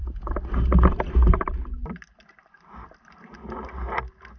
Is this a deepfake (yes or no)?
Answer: no